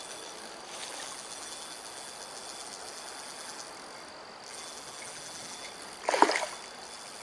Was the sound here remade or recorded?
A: recorded